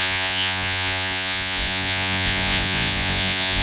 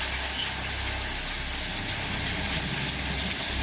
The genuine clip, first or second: second